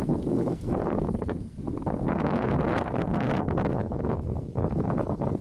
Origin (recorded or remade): remade